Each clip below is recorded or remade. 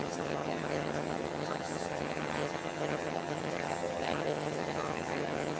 remade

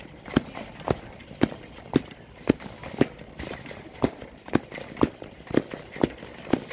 recorded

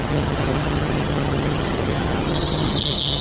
remade